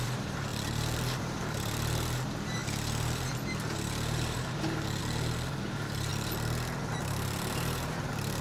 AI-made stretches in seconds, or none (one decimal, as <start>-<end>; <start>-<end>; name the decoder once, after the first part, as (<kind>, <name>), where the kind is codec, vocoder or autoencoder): 0.0-6.1 (vocoder, BigVGAN v2); 7.0-8.4